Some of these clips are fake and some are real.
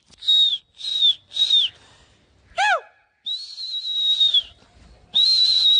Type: real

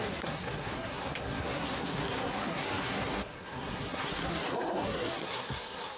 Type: fake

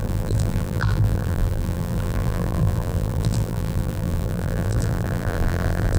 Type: fake